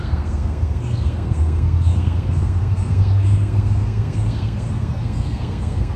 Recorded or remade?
remade